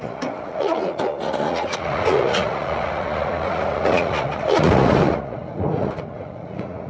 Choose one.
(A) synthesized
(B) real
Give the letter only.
A